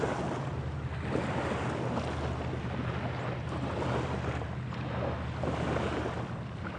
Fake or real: real